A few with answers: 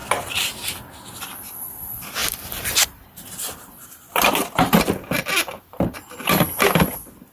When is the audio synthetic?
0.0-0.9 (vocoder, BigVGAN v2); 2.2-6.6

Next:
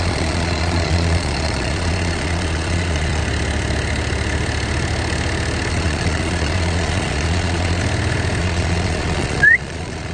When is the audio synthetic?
0.0-3.2 (vocoder, Vocos); 5.7-7.8; 8.4-10.1